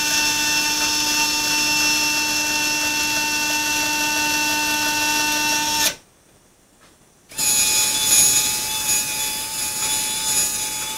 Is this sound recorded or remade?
recorded